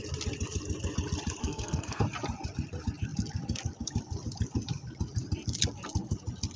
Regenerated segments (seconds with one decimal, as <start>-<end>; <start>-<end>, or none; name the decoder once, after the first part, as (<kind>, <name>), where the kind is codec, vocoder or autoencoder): 1.4-2.0 (codec, SNAC)